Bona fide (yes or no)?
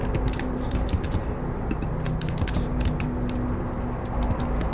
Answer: yes